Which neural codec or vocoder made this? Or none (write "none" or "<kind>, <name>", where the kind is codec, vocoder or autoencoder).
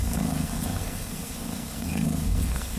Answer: codec, SNAC